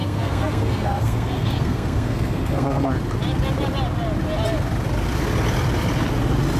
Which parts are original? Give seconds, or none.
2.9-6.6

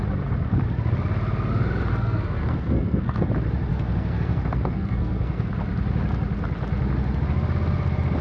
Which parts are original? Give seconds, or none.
0.0-1.9; 3.3-3.7; 5.5-8.2

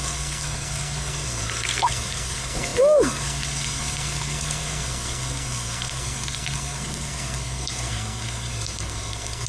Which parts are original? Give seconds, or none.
none

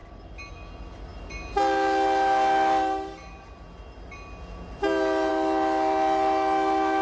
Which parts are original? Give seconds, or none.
0.0-7.0

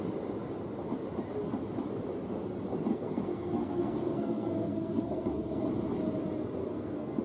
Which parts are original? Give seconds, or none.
0.0-2.9; 5.7-6.6

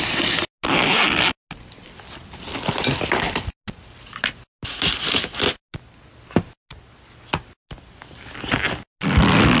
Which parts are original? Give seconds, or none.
0.0-9.6